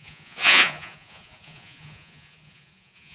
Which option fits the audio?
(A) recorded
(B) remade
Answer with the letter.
B